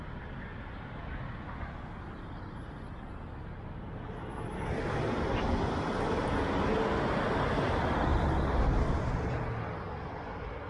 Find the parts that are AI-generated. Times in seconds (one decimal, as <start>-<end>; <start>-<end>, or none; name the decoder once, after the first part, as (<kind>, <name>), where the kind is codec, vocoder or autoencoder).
8.1-8.6 (vocoder, BigVGAN v2)